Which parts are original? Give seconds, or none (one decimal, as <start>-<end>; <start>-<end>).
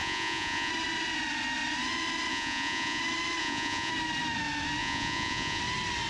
0.7-2.3; 3.0-3.4; 3.9-4.8; 5.6-6.1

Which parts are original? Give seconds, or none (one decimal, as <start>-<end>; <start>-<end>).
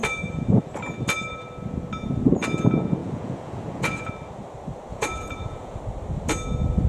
0.0-3.0; 4.1-4.9; 5.8-6.9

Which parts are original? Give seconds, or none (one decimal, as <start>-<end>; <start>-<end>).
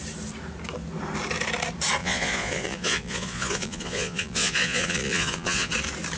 0.0-2.0; 5.7-6.2